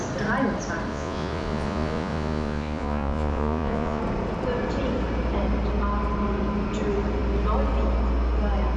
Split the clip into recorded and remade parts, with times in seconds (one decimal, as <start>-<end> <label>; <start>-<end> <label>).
0.0-0.9 recorded; 0.9-4.0 remade; 4.0-8.8 recorded